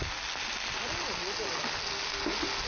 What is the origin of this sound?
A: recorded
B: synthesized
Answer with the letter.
A